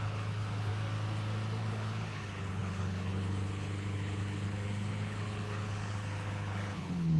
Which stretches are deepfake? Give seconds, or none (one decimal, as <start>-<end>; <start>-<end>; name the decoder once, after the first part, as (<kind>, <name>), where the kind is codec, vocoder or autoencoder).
0.0-0.7 (codec, HILCodec); 1.6-7.2